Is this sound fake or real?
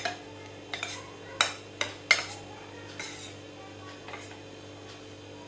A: real